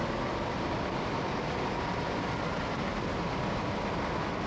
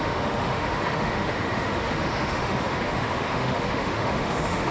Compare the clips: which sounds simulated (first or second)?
second